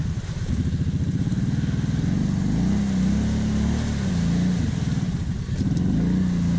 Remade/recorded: recorded